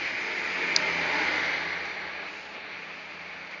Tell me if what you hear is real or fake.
real